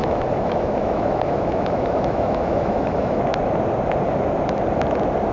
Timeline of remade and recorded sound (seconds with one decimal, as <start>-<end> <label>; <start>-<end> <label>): 0.0-3.2 remade; 3.2-5.3 recorded